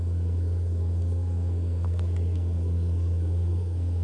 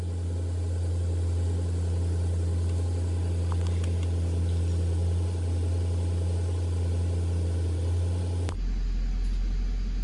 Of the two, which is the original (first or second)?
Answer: second